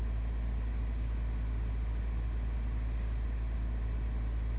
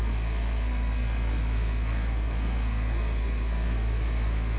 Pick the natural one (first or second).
first